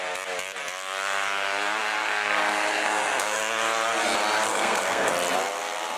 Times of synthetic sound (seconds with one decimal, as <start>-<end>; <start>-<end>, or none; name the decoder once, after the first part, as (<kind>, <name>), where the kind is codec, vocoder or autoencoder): 2.0-3.4 (codec, SNAC); 4.5-5.1